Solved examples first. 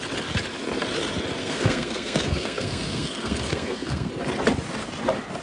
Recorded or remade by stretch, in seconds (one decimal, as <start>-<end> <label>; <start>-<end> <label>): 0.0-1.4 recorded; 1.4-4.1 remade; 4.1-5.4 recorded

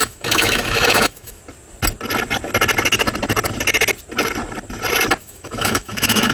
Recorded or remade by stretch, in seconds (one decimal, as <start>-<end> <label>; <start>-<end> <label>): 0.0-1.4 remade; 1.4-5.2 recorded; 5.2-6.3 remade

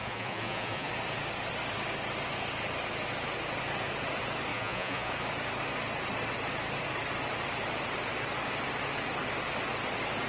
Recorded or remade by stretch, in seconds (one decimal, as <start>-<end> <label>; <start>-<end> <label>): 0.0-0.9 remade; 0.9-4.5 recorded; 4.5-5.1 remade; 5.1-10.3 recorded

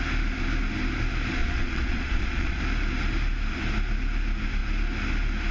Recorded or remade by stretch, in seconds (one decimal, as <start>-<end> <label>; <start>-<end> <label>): 0.0-1.4 recorded; 1.4-2.6 remade; 2.6-5.5 recorded